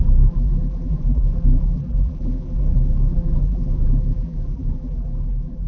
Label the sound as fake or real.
fake